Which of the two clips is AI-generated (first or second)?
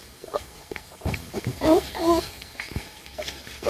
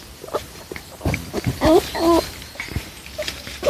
first